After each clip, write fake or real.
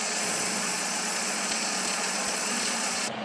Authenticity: fake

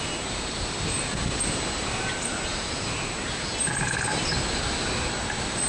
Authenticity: real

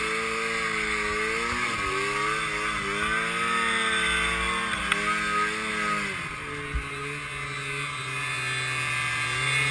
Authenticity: real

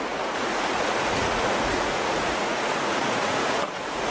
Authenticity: fake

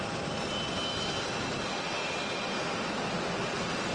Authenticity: real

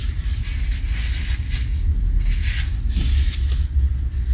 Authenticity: real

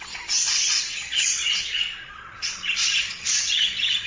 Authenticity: fake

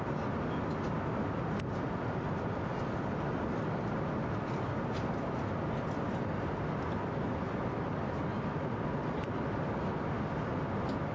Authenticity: real